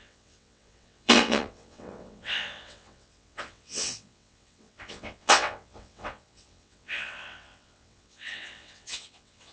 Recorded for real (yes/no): no